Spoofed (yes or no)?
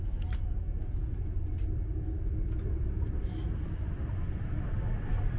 no